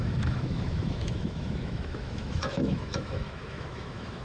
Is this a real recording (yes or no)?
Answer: no